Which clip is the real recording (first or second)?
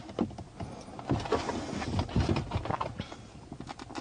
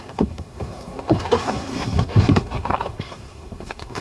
first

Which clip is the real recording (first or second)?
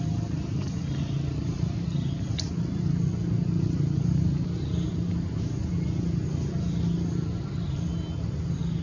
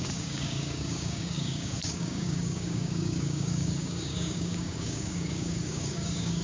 first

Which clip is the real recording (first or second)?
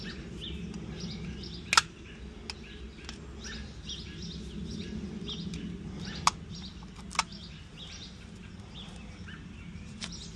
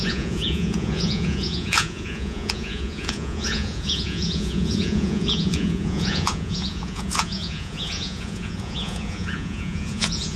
first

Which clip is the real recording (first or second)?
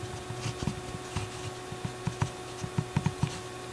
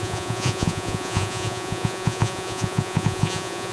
first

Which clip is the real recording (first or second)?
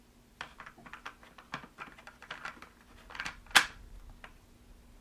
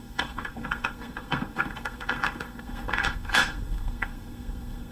first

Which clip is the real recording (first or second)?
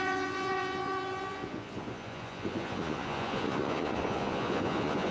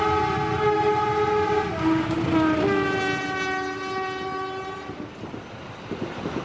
second